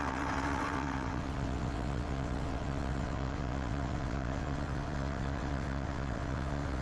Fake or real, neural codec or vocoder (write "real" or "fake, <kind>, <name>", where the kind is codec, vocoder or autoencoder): fake, vocoder, WaveNeXt